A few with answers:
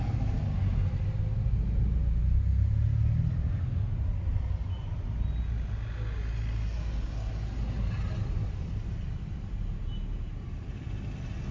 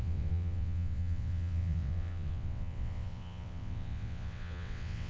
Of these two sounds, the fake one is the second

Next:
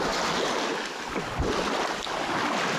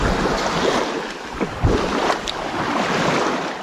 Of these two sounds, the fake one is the second